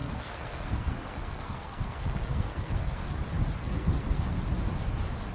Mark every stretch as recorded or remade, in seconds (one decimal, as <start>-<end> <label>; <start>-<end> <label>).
0.0-3.2 remade; 3.2-3.6 recorded; 3.6-4.4 remade; 4.4-5.3 recorded